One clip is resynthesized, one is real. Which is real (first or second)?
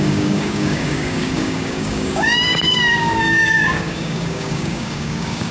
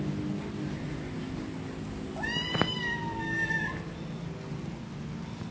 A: second